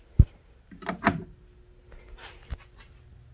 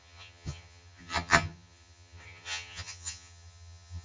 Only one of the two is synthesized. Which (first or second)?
second